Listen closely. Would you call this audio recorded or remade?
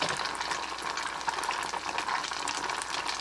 recorded